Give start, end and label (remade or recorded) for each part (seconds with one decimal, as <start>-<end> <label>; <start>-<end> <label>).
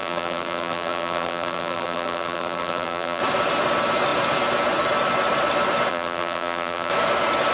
0.0-3.2 remade; 3.2-5.9 recorded; 5.9-6.9 remade; 6.9-7.5 recorded